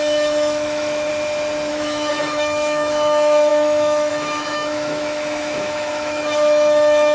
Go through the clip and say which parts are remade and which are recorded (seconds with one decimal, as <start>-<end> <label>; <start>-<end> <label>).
0.0-1.1 remade; 1.1-1.7 recorded; 1.7-7.1 remade